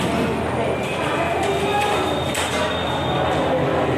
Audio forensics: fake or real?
real